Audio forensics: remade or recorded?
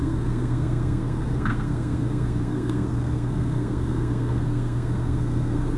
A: remade